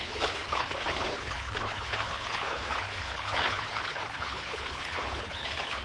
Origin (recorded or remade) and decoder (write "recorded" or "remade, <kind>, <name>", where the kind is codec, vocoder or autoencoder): remade, codec, HILCodec